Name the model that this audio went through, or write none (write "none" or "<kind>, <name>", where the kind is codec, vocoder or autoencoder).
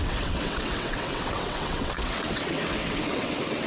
vocoder, WaveNeXt